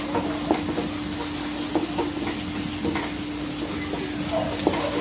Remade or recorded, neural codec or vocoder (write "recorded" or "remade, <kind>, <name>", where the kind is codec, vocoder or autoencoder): recorded